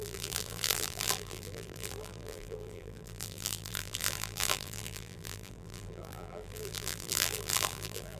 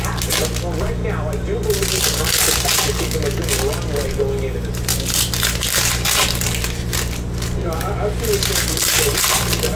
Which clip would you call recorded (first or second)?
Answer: second